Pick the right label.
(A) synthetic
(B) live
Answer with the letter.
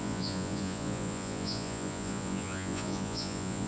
A